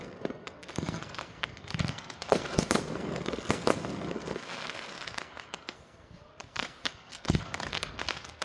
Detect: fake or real fake